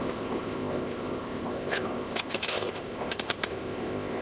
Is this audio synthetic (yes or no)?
yes